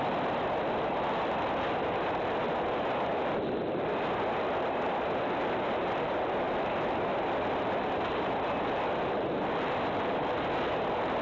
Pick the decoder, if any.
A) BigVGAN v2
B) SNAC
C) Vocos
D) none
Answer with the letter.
D